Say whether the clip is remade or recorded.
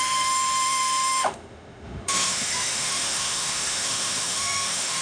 remade